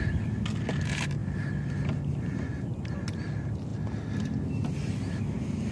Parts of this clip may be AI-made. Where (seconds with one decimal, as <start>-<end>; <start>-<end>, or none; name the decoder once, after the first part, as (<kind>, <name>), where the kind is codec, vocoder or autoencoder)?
1.2-2.2 (vocoder, BigVGAN v2); 3.7-5.2